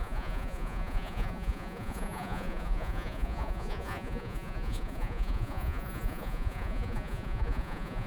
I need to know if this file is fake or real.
fake